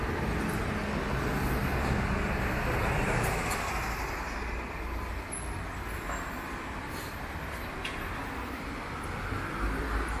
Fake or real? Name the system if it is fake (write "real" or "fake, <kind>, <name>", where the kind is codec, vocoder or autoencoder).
real